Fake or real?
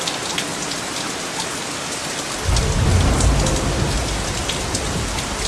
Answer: real